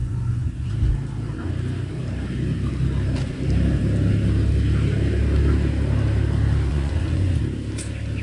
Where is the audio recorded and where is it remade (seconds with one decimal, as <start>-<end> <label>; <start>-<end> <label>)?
0.0-0.7 remade; 0.7-6.7 recorded; 6.7-7.4 remade; 7.4-8.2 recorded

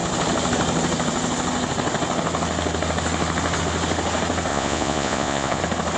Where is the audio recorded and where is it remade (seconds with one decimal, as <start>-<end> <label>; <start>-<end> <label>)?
0.0-4.5 recorded; 4.5-5.6 remade; 5.6-6.0 recorded